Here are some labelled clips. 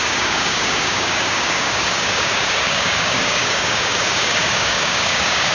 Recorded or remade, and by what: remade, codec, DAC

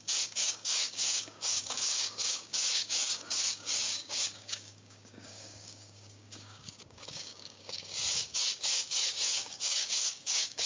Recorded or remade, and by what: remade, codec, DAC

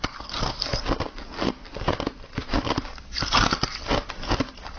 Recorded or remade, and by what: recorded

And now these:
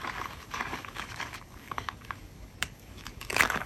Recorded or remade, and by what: remade, codec, DAC